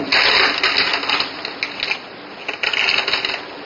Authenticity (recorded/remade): recorded